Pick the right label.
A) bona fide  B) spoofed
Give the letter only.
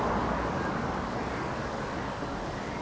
B